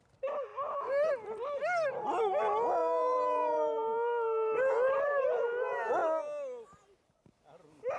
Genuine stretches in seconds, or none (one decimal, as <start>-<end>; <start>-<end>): 0.0-0.5; 1.1-2.8; 5.5-8.0